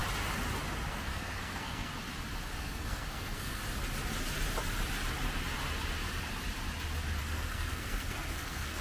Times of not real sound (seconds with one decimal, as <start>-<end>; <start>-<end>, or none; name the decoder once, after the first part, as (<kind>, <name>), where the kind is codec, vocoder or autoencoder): 0.9-1.9 (codec, SNAC); 2.6-3.6; 7.2-8.8